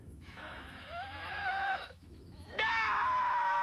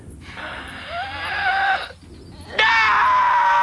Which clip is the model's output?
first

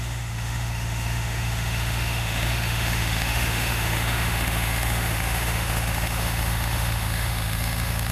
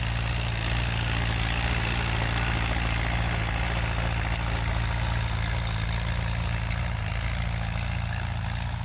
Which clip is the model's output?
first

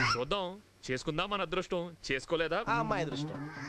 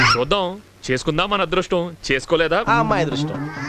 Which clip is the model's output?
first